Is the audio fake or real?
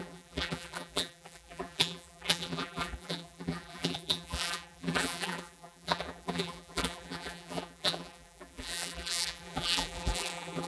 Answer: fake